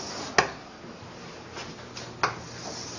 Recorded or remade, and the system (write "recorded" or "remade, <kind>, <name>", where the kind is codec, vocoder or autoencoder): recorded